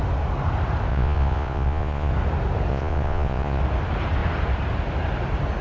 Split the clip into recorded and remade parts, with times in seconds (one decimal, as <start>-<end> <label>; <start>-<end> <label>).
0.0-0.9 recorded; 0.9-2.1 remade; 2.1-2.7 recorded; 2.7-3.6 remade; 3.6-5.6 recorded

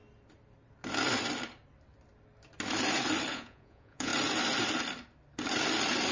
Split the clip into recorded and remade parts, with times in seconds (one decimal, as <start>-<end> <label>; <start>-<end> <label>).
0.0-3.3 recorded; 3.3-4.1 remade; 4.1-6.1 recorded